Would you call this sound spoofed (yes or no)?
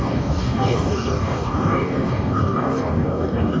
yes